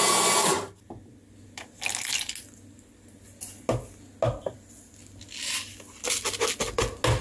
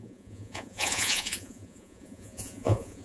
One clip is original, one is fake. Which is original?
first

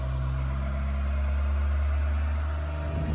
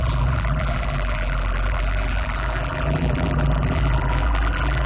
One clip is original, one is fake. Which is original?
first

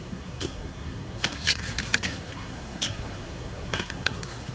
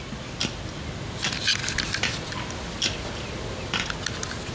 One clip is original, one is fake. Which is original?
second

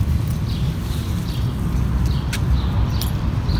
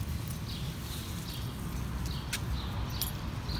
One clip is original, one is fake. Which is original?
second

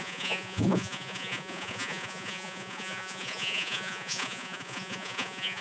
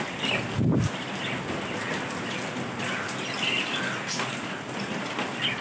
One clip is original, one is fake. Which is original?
second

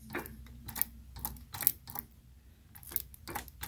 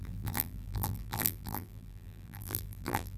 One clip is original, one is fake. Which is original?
first